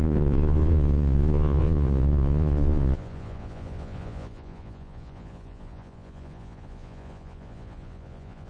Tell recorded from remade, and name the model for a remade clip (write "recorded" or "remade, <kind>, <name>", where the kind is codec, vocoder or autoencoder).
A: remade, vocoder, Vocos